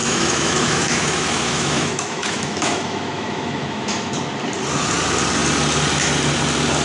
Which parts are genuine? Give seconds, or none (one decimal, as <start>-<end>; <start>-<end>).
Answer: 4.1-6.8